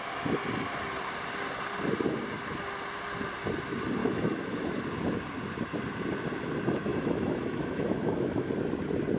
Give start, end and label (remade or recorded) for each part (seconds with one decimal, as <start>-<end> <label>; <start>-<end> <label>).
0.0-4.0 recorded; 4.0-4.8 remade; 4.8-6.9 recorded; 6.9-8.5 remade; 8.5-9.2 recorded